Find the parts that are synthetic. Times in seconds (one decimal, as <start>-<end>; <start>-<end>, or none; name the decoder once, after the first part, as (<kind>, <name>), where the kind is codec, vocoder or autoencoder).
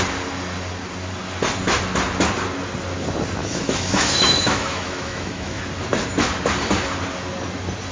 3.4-5.6 (autoencoder, DAC-VAE)